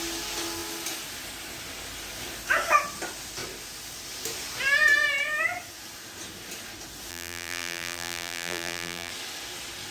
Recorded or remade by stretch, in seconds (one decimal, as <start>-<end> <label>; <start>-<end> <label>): 0.0-7.1 recorded; 7.1-9.1 remade; 9.1-9.9 recorded